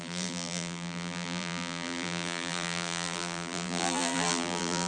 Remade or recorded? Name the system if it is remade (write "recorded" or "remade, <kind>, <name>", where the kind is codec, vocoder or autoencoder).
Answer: remade, vocoder, BigVGAN v2